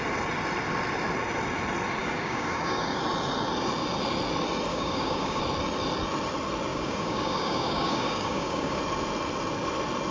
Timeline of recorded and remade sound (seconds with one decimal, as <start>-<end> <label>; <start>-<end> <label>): 0.0-2.0 recorded; 2.0-3.0 remade; 3.0-4.7 recorded; 4.7-5.4 remade; 5.4-6.7 recorded; 6.7-8.8 remade; 8.8-10.1 recorded